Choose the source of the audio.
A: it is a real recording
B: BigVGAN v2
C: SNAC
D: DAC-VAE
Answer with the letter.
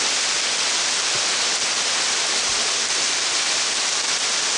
A